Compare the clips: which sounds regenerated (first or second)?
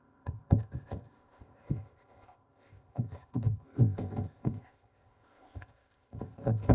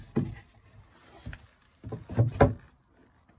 first